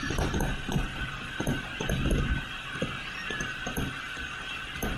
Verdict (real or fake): real